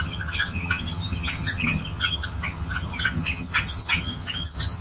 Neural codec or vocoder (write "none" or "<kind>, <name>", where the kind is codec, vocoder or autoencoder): vocoder, HiFi-GAN